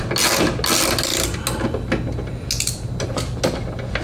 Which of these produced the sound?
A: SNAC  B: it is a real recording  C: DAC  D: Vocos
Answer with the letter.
B